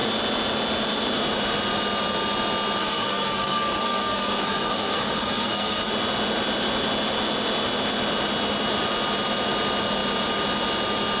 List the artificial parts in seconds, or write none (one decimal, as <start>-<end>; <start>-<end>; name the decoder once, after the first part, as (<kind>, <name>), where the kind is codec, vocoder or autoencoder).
2.8-5.9 (codec, SNAC)